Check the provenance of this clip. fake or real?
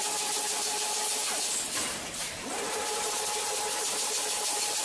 fake